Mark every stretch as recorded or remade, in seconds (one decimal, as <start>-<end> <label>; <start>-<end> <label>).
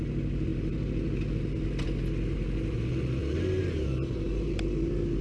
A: 0.0-5.2 recorded